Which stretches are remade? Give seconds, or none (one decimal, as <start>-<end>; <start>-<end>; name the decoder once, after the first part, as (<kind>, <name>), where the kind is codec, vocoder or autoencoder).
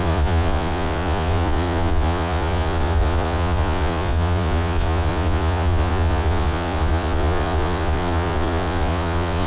0.0-9.5 (vocoder, Vocos)